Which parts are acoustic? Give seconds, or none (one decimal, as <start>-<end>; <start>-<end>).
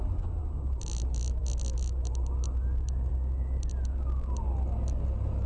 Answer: 0.0-5.5